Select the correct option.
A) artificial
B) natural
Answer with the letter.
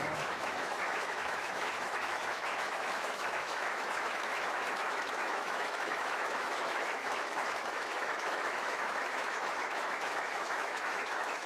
A